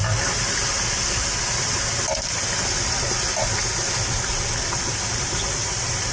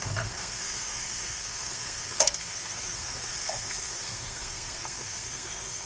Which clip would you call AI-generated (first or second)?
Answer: second